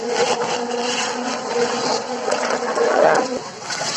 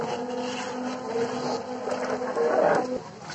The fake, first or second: first